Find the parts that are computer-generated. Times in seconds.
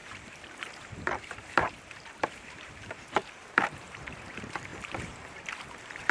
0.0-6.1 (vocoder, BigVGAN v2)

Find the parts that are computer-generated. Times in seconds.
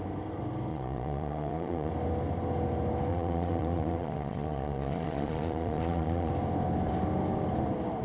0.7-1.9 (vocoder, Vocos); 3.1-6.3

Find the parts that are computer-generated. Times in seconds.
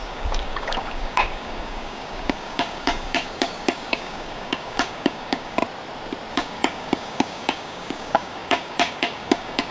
0.0-5.6 (codec, DAC); 6.3-9.7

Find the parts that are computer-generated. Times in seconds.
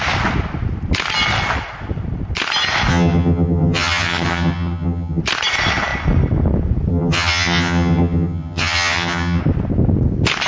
2.9-5.2 (vocoder, HiFi-GAN); 6.9-9.4